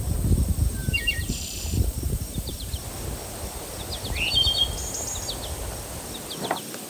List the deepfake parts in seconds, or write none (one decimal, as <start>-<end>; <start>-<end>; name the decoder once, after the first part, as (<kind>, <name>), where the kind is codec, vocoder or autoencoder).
0.8-2.9 (vocoder, BigVGAN v2)